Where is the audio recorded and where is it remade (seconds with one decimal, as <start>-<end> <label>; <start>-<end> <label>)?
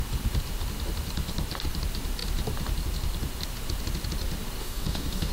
0.0-4.6 recorded; 4.6-5.3 remade